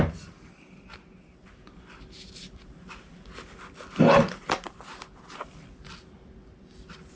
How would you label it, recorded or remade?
recorded